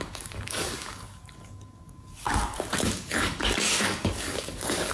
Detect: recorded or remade remade